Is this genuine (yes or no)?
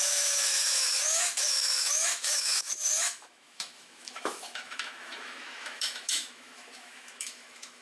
no